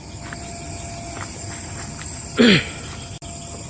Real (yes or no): yes